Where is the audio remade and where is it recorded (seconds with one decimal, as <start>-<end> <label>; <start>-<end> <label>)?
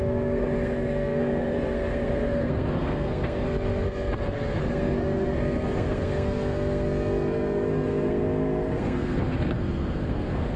0.0-10.6 remade